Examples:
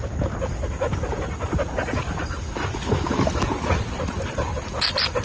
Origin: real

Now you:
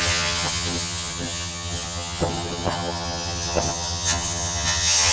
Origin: fake